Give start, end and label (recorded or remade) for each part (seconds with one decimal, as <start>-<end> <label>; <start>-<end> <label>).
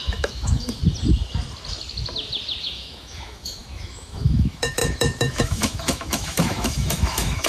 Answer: 0.0-0.8 remade; 0.8-2.6 recorded; 2.6-7.5 remade